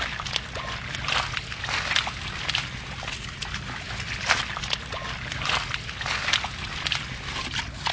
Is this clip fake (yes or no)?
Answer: no